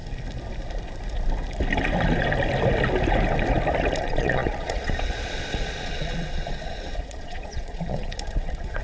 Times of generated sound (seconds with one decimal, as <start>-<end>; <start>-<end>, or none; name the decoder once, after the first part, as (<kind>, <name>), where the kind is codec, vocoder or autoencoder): 4.0-8.8 (vocoder, Vocos)